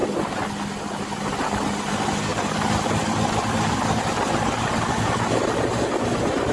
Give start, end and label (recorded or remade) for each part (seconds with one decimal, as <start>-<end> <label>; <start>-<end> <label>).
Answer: 0.0-6.5 recorded

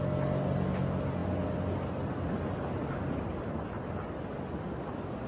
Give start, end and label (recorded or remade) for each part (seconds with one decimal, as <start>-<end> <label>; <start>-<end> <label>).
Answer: 0.0-5.3 recorded